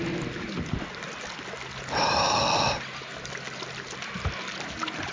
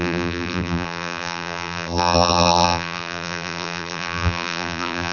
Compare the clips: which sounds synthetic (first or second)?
second